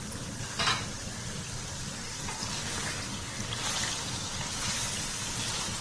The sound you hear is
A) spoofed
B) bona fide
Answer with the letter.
B